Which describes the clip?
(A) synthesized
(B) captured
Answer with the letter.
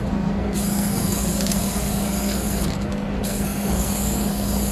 A